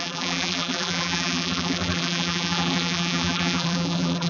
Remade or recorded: remade